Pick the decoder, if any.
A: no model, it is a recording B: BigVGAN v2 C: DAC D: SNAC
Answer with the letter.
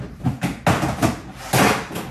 A